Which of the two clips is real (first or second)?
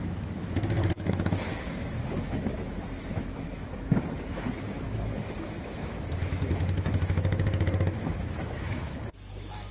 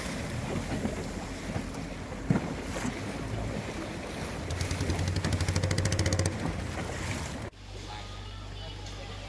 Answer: second